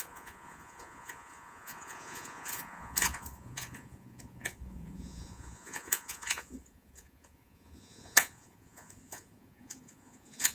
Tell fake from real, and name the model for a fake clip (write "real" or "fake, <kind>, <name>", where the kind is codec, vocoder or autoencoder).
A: fake, vocoder, Vocos